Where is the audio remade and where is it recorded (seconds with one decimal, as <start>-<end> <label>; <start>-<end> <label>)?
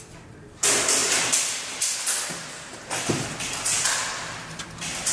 0.0-5.1 recorded